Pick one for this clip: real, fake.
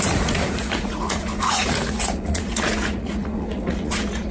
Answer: fake